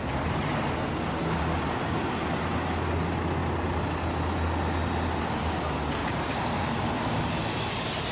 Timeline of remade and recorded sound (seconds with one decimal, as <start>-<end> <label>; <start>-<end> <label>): 0.0-6.0 recorded; 6.0-6.9 remade; 6.9-8.1 recorded